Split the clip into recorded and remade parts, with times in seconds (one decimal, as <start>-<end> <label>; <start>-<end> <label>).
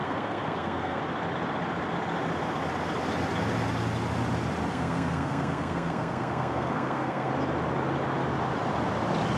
0.0-1.0 remade; 1.0-4.7 recorded; 4.7-7.3 remade; 7.3-9.4 recorded